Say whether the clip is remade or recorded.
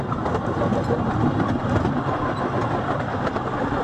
recorded